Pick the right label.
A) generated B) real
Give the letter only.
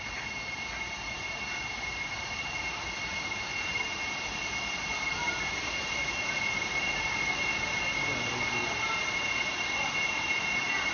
B